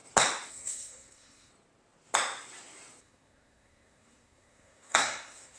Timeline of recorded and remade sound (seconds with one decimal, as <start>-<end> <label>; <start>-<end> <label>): 0.0-0.5 recorded; 0.5-1.5 remade; 1.5-3.0 recorded; 3.0-5.6 remade